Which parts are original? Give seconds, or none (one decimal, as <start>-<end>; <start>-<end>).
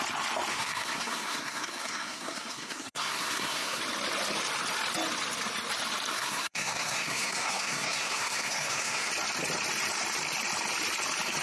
0.0-0.5; 3.8-6.1; 9.1-11.4